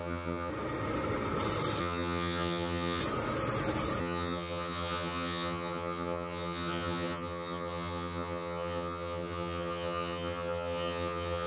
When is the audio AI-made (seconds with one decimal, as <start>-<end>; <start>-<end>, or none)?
0.0-0.5; 1.8-3.0; 4.0-11.5